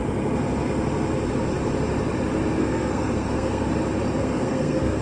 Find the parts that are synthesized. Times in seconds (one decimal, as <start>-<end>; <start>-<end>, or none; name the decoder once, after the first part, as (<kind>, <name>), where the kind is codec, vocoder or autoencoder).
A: 2.6-3.7 (codec, SNAC); 4.2-5.0